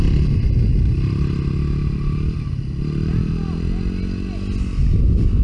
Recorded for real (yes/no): yes